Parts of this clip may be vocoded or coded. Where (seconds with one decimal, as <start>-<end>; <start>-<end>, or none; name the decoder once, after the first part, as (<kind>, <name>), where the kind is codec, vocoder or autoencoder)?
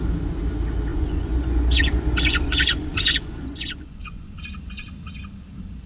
0.9-4.4 (vocoder, Vocos)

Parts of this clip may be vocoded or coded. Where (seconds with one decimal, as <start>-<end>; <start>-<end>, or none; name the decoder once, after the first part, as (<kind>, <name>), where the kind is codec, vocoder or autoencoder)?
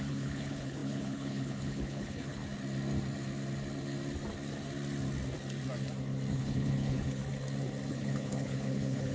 0.0-2.4 (codec, HILCodec); 6.3-7.2; 7.9-9.1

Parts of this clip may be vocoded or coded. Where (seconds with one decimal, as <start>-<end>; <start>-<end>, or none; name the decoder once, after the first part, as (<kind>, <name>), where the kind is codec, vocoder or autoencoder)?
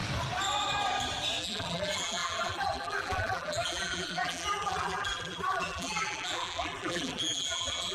1.4-7.9 (vocoder, BigVGAN v2)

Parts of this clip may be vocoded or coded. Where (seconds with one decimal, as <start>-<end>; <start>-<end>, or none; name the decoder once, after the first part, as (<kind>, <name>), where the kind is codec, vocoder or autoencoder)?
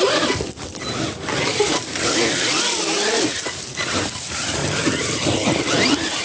none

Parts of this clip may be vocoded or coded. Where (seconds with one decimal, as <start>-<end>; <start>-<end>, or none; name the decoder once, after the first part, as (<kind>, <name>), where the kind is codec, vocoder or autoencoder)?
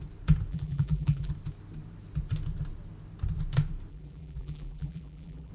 0.5-1.3 (vocoder, BigVGAN v2); 3.9-5.5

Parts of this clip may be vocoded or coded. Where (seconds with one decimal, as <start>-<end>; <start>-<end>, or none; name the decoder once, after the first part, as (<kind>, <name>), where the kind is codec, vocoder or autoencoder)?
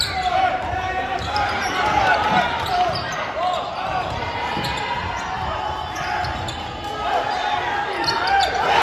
0.0-5.0 (vocoder, BigVGAN v2)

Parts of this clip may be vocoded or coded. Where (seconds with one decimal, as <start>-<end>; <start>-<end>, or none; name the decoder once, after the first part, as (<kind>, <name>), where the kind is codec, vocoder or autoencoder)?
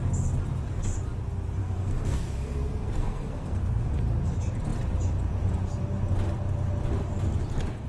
1.6-3.9 (codec, SNAC)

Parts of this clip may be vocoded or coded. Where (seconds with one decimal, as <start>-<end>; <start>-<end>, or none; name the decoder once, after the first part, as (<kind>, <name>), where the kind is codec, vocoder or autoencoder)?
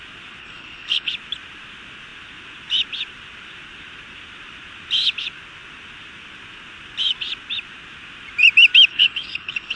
0.4-1.1 (codec, HILCodec); 8.9-9.8